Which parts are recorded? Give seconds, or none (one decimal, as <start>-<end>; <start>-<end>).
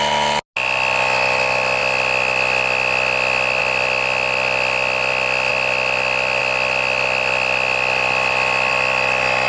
0.0-9.5